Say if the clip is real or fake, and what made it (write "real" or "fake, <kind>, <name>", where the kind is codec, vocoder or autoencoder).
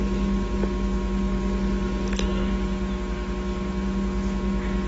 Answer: real